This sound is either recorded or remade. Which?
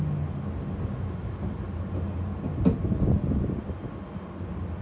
recorded